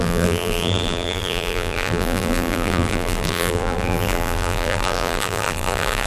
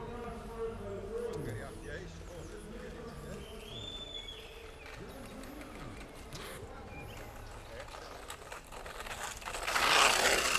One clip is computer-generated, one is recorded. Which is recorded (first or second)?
second